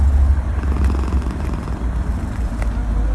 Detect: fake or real real